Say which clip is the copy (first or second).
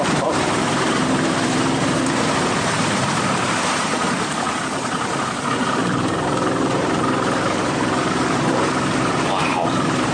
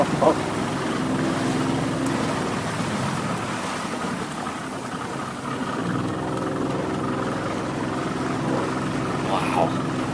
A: first